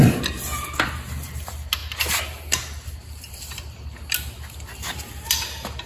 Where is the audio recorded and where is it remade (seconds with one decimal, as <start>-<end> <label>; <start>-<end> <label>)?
0.0-5.9 recorded

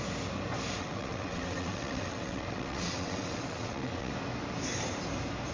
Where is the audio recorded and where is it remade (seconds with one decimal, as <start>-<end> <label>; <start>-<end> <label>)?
0.0-0.8 recorded; 0.8-4.1 remade; 4.1-5.5 recorded

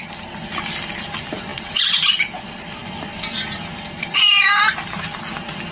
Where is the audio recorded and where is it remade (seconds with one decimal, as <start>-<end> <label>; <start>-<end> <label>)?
0.0-1.5 recorded; 1.5-2.1 remade; 2.1-5.7 recorded

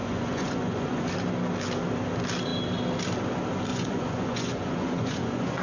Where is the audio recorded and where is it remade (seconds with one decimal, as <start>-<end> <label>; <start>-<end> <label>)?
0.0-1.1 remade; 1.1-3.7 recorded; 3.7-5.6 remade

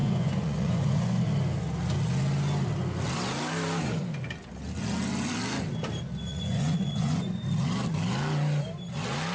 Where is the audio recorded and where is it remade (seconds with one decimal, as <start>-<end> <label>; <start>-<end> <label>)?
0.0-1.2 remade; 1.2-6.3 recorded; 6.3-7.4 remade; 7.4-9.3 recorded

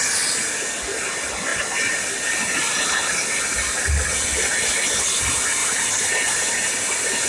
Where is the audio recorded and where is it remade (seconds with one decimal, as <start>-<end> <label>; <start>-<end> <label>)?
0.0-5.6 recorded; 5.6-6.7 remade; 6.7-7.3 recorded